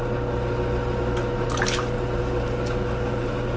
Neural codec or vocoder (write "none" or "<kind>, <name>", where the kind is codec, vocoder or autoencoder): none